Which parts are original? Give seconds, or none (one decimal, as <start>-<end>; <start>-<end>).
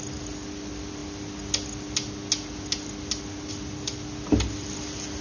0.0-5.2